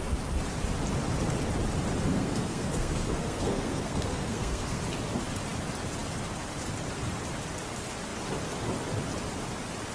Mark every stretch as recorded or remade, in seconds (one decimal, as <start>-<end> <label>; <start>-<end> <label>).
0.0-2.1 recorded; 2.1-4.8 remade; 4.8-9.9 recorded